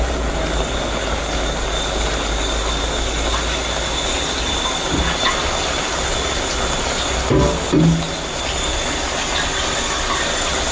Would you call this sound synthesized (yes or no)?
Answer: no